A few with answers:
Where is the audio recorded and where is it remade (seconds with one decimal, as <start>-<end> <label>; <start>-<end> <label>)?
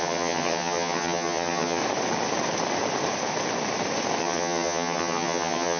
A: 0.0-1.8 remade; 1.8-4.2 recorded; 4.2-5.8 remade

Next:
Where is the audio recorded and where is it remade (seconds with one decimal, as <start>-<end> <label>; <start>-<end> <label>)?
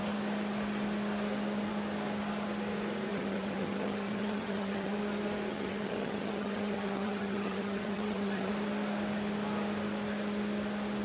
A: 0.0-3.1 recorded; 3.1-4.9 remade; 4.9-5.5 recorded; 5.5-8.5 remade; 8.5-11.0 recorded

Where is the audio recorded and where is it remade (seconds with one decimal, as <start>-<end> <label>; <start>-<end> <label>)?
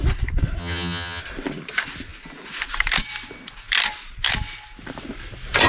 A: 0.0-0.6 recorded; 0.6-1.2 remade; 1.2-5.7 recorded